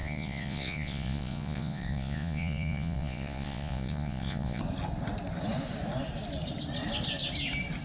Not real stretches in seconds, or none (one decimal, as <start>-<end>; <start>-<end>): 0.0-4.6